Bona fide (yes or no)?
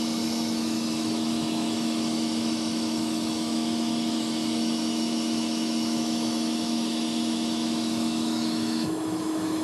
no